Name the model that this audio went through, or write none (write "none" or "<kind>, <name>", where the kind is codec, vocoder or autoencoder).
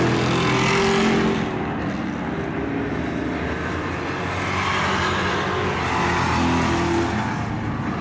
none